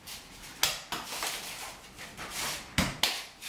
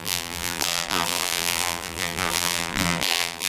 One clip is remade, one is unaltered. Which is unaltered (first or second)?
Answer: first